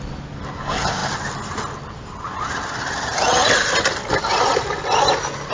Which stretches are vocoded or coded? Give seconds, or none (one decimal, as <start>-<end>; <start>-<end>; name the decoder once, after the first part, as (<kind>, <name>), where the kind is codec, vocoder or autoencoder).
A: none